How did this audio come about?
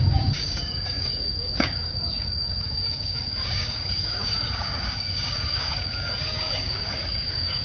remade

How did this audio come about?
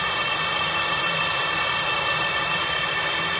remade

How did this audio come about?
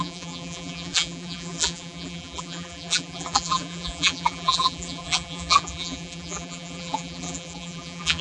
remade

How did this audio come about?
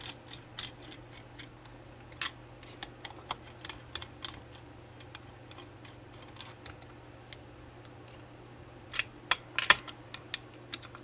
recorded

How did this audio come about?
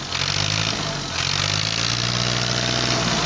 recorded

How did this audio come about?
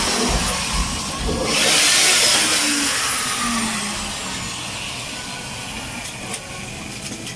recorded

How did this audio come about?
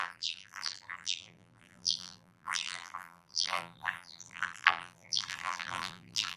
remade